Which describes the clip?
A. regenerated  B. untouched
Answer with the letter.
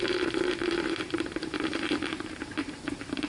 A